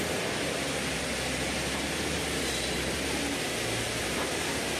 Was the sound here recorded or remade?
recorded